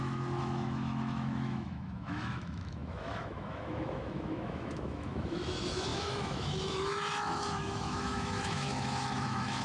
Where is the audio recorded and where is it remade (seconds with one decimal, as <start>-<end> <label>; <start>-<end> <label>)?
0.0-9.6 remade